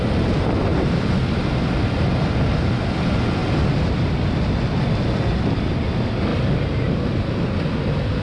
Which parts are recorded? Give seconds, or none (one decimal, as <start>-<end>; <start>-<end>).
0.0-0.7; 1.9-3.4; 4.1-8.2